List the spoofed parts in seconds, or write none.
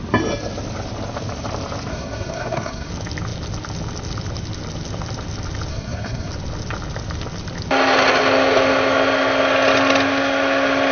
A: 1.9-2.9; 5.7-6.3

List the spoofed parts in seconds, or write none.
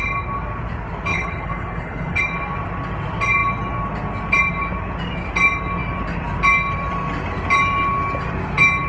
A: 1.1-2.2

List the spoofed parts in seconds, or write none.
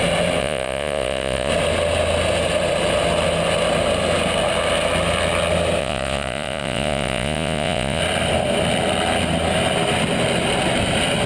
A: 0.4-1.5; 5.8-8.0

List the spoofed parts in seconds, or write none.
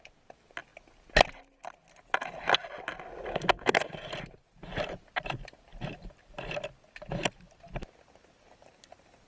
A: 3.3-4.1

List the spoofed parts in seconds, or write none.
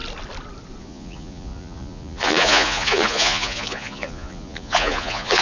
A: 0.8-5.4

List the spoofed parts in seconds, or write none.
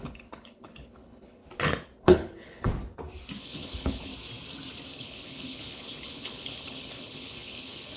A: 0.0-1.4; 2.0-2.7; 3.4-4.1; 4.9-8.0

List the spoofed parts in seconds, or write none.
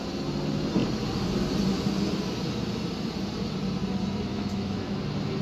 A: 4.3-5.0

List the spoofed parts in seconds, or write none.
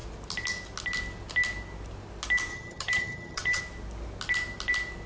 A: 2.5-3.6